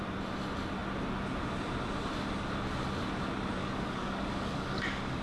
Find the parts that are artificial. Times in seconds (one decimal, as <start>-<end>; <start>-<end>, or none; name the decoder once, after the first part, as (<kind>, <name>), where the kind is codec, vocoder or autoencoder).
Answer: 3.6-5.2 (codec, DAC)

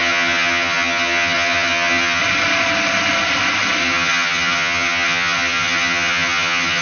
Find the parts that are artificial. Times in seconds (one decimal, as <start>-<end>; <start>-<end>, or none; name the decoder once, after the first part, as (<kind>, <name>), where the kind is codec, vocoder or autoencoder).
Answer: 0.0-2.2 (vocoder, HiFi-GAN); 3.8-6.8